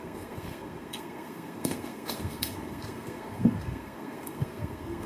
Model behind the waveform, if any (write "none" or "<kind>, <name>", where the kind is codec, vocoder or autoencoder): codec, SNAC